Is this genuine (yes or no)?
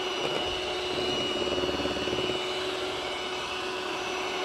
yes